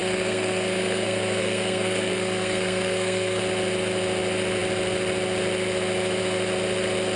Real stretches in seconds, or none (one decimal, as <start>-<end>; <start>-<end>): 3.4-7.2